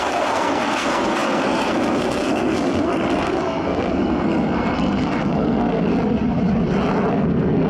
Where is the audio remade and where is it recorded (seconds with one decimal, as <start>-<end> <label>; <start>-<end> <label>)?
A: 0.0-5.9 remade; 5.9-7.1 recorded; 7.1-7.7 remade